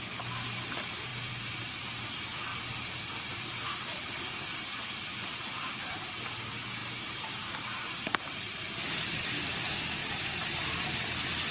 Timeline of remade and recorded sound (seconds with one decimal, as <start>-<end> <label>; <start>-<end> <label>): 0.0-1.1 recorded; 1.1-1.6 remade; 1.6-2.5 recorded; 2.5-6.2 remade; 6.2-6.8 recorded; 6.8-8.7 remade; 8.7-10.0 recorded; 10.0-10.5 remade; 10.5-11.5 recorded